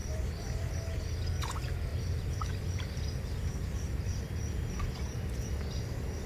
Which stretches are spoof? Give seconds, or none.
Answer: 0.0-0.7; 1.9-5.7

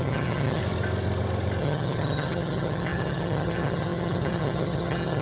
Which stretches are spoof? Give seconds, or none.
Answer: 0.0-0.6; 1.6-5.2

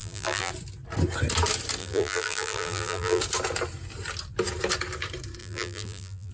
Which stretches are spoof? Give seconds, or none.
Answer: 0.0-0.5; 1.8-3.2; 5.4-6.3

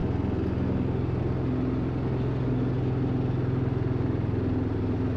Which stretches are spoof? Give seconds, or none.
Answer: none

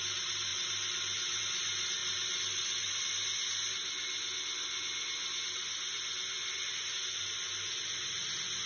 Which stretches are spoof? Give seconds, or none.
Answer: none